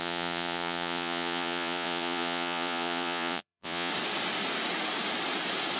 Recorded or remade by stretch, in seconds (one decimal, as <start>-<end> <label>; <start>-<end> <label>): 0.0-3.9 remade; 3.9-5.8 recorded